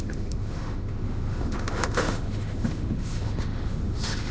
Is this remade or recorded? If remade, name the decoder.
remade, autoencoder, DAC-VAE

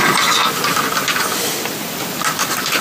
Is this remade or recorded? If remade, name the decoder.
recorded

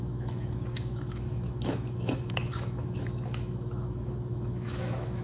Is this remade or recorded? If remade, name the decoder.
remade, autoencoder, DAC-VAE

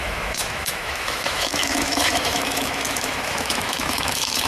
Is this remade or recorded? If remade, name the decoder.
remade, autoencoder, DAC-VAE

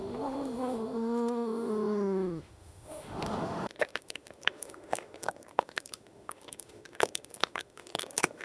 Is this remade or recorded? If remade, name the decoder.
remade, autoencoder, DAC-VAE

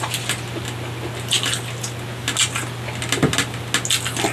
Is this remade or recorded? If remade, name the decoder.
recorded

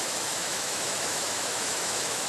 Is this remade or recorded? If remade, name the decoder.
remade, autoencoder, DAC-VAE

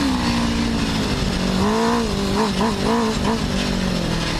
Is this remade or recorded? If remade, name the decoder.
recorded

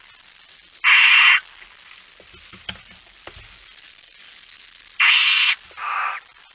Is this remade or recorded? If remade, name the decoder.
recorded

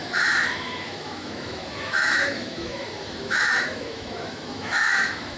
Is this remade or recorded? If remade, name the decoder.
remade, autoencoder, DAC-VAE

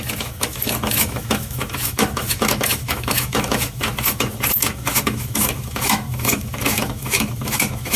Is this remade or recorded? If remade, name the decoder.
remade, autoencoder, DAC-VAE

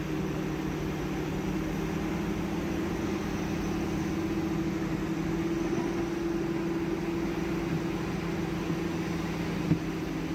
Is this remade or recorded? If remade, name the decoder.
recorded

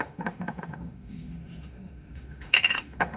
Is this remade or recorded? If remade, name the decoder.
remade, autoencoder, DAC-VAE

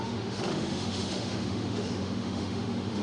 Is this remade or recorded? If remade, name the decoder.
remade, autoencoder, DAC-VAE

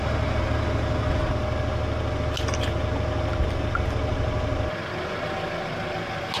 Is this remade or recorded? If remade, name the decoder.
recorded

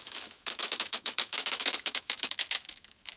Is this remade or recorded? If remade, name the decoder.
remade, autoencoder, DAC-VAE